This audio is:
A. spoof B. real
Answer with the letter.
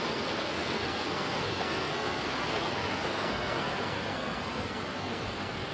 A